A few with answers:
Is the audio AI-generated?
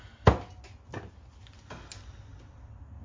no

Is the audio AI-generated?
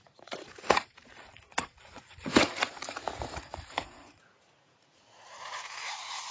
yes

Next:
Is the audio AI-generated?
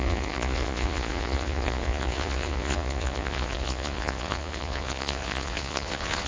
yes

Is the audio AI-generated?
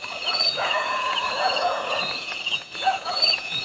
yes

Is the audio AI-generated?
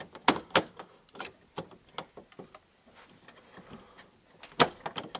no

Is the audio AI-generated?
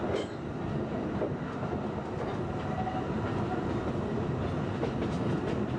no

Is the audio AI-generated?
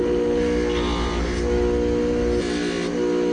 no